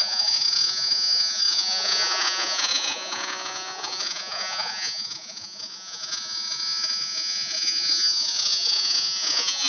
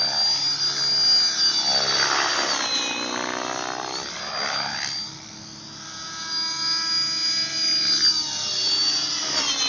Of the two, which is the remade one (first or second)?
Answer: first